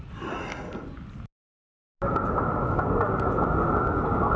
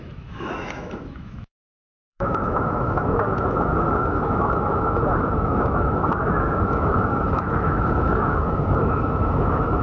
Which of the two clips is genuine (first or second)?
first